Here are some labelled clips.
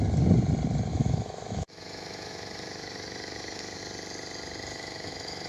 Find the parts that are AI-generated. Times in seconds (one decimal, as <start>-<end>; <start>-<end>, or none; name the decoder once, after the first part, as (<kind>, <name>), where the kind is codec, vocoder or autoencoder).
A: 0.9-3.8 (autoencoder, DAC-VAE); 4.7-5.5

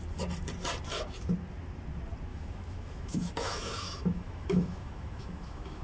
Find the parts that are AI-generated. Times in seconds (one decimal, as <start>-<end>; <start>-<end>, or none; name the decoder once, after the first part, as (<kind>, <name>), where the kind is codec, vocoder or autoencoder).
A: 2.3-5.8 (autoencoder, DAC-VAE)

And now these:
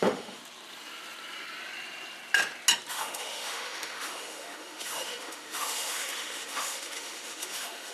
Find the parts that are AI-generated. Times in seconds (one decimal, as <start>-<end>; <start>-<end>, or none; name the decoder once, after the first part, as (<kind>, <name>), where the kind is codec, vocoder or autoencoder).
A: 0.0-0.4 (autoencoder, DAC-VAE); 2.9-7.9

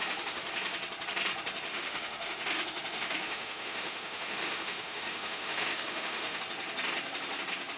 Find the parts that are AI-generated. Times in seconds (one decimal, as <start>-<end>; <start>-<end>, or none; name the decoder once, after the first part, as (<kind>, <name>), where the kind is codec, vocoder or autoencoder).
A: 1.7-6.4 (autoencoder, DAC-VAE)

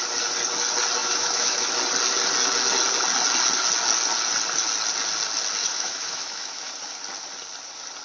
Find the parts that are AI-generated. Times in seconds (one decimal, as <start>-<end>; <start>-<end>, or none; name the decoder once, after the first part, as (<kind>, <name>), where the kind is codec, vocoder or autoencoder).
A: 1.0-1.7 (autoencoder, DAC-VAE); 5.6-6.7